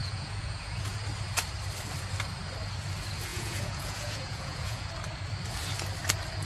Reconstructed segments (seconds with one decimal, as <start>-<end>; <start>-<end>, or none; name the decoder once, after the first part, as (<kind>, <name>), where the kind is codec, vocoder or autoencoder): 0.0-1.0 (vocoder, Vocos); 3.3-4.9